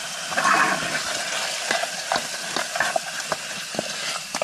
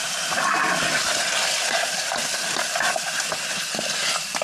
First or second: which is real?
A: first